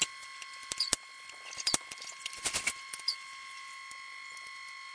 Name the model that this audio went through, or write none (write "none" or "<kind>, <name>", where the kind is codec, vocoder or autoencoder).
none